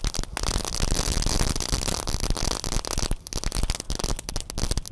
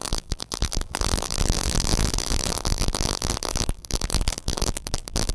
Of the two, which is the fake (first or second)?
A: second